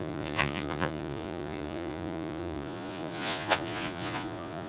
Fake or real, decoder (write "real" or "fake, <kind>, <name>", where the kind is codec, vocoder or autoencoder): fake, vocoder, Vocos